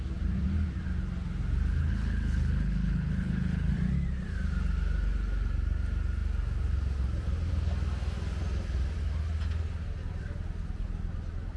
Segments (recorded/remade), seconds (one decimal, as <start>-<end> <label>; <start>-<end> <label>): 0.0-1.8 recorded; 1.8-3.7 remade; 3.7-11.6 recorded